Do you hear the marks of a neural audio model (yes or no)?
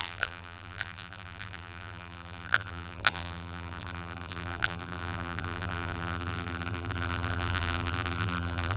yes